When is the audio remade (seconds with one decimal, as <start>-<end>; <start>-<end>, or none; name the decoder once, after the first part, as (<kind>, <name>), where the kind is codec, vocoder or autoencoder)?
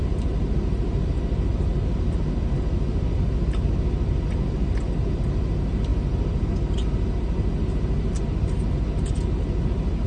none